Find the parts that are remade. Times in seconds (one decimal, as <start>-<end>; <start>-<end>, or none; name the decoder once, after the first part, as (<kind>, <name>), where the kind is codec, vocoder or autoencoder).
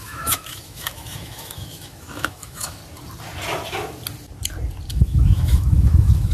0.0-2.8 (autoencoder, DAC-VAE); 4.9-6.3